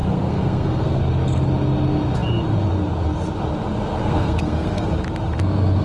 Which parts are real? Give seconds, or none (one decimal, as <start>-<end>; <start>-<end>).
1.0-4.0; 4.9-5.8